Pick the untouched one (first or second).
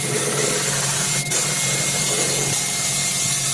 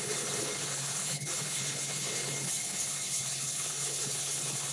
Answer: first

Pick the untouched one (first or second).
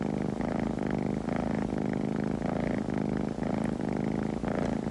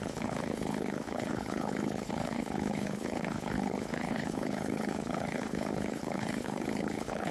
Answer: first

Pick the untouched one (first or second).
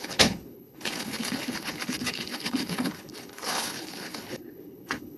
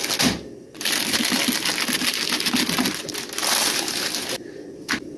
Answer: second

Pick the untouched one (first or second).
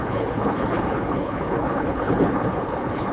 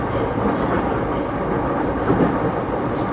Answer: second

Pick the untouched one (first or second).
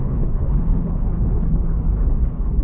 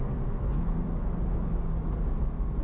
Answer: second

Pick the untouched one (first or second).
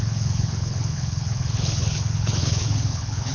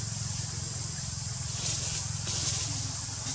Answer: second